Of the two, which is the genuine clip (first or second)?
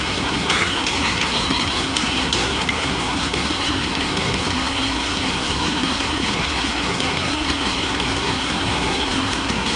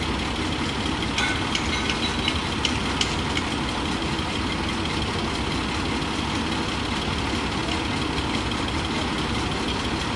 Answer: second